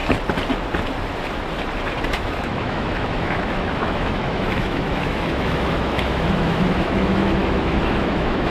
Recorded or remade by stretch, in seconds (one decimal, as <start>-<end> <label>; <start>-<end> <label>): 0.0-2.1 recorded; 2.1-8.5 remade